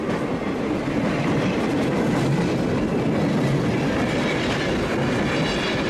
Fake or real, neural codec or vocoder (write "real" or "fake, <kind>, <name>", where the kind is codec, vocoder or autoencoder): real